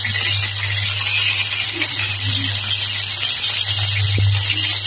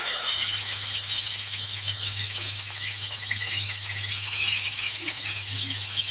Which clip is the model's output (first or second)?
second